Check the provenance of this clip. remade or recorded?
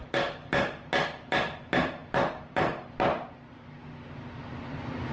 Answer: recorded